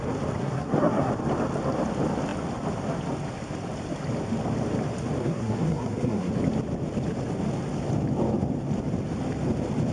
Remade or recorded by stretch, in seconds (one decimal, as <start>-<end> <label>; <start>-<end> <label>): 0.0-0.4 recorded; 0.4-1.1 remade; 1.1-5.2 recorded; 5.2-6.3 remade; 6.3-9.9 recorded